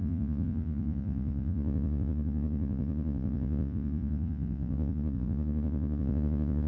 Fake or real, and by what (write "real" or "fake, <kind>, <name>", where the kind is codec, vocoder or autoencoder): fake, vocoder, Vocos